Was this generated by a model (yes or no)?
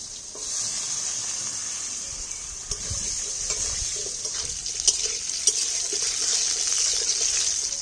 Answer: no